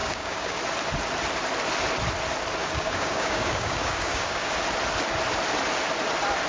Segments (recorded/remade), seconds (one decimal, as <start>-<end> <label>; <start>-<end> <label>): 0.0-0.6 remade; 0.6-2.6 recorded; 2.6-4.5 remade; 4.5-6.5 recorded